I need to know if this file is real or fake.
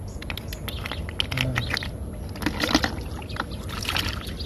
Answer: real